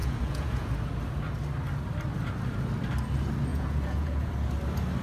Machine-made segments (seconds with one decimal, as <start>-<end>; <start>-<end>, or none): 0.0-0.7; 3.5-4.3